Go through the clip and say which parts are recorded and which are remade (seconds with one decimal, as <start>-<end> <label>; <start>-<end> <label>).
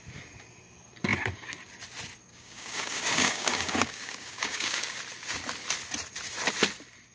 0.0-2.3 recorded; 2.3-5.0 remade; 5.0-7.1 recorded